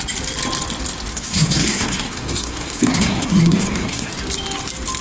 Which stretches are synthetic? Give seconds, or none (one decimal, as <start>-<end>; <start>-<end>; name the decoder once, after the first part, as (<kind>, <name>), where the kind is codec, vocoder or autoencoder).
1.1-4.1 (codec, SNAC)